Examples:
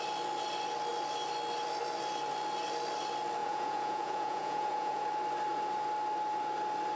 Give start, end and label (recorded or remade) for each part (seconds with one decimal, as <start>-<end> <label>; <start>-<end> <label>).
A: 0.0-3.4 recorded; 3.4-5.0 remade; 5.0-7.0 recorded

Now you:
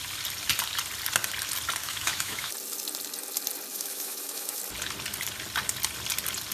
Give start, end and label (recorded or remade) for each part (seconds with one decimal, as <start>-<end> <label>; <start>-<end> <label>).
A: 0.0-1.8 recorded; 1.8-2.5 remade; 2.5-3.7 recorded; 3.7-4.6 remade; 4.6-6.5 recorded

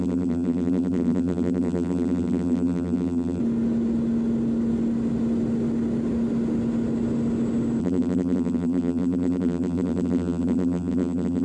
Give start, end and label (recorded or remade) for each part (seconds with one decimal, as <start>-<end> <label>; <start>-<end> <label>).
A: 0.0-3.4 remade; 3.4-7.8 recorded; 7.8-11.4 remade

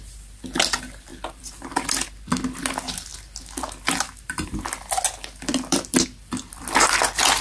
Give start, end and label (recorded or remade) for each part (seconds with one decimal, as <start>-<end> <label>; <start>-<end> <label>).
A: 0.0-1.1 recorded; 1.1-1.7 remade; 1.7-5.5 recorded; 5.5-7.0 remade; 7.0-7.4 recorded

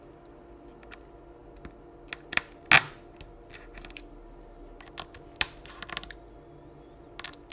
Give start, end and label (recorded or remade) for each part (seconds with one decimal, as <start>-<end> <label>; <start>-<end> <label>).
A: 0.0-7.5 recorded

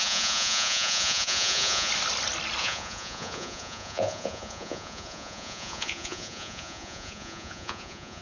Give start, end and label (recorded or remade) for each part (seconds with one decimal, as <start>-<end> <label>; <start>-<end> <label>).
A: 0.0-1.9 remade; 1.9-2.6 recorded; 2.6-8.2 remade

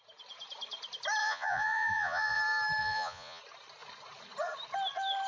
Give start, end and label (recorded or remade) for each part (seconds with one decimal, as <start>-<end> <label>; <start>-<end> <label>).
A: 0.0-1.2 recorded; 1.2-2.4 remade; 2.4-2.8 recorded; 2.8-3.4 remade; 3.4-5.3 recorded

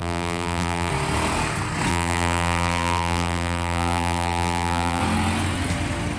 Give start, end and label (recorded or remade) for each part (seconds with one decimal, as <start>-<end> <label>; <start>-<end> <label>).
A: 0.0-0.9 remade; 0.9-1.9 recorded; 1.9-5.0 remade; 5.0-6.2 recorded